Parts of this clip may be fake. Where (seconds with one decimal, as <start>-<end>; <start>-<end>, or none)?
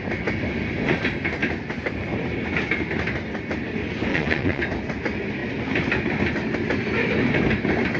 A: 4.1-4.6